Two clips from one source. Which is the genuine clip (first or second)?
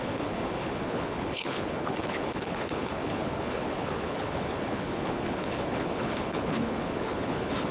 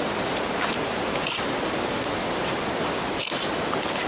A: second